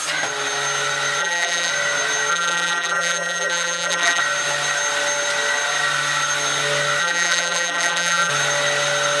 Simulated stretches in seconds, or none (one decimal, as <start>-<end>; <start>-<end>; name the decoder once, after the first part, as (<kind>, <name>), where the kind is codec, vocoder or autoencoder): 1.2-1.7 (vocoder, BigVGAN v2); 2.3-4.2; 7.0-8.3